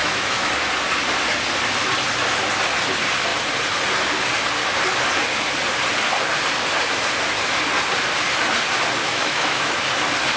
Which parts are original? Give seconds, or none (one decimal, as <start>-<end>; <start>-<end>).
0.5-9.0; 9.8-10.4